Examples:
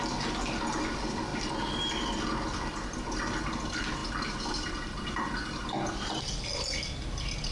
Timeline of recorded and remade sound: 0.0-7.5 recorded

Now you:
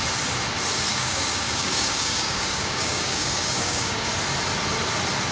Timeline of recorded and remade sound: 0.0-0.9 recorded; 0.9-4.1 remade; 4.1-5.3 recorded

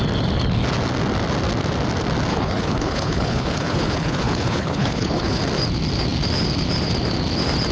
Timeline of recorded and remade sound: 0.0-2.3 recorded; 2.3-5.4 remade; 5.4-7.7 recorded